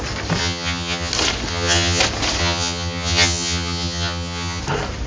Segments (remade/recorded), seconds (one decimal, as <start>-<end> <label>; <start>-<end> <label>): 0.0-0.4 recorded; 0.4-1.1 remade; 1.1-1.5 recorded; 1.5-2.0 remade; 2.0-2.4 recorded; 2.4-4.6 remade; 4.6-5.1 recorded